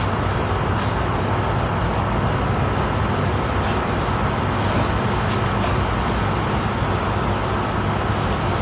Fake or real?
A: real